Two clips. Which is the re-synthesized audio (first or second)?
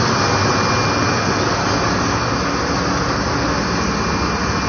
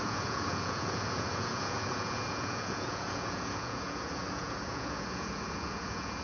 second